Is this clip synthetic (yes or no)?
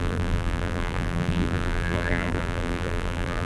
yes